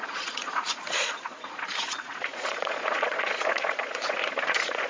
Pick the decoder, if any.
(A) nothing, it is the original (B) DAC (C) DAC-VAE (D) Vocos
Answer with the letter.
D